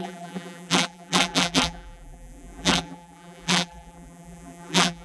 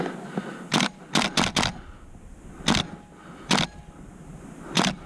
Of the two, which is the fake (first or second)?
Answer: first